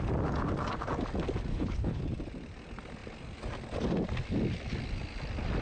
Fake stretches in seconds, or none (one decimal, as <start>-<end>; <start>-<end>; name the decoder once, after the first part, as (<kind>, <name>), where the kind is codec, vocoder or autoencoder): 1.5-2.0 (codec, HILCodec)